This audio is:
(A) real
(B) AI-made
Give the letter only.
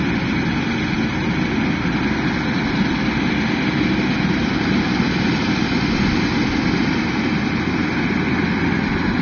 A